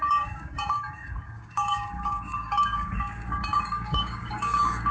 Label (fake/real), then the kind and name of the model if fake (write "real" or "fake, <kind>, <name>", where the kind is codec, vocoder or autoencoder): fake, codec, DAC